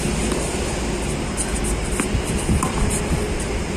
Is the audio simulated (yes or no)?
no